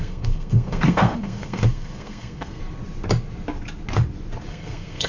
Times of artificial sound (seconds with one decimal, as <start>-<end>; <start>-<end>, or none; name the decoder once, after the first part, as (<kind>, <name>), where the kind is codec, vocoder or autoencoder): 0.0-2.6 (codec, SNAC); 4.5-5.1